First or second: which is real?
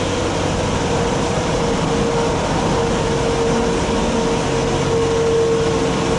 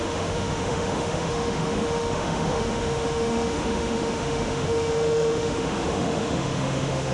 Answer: first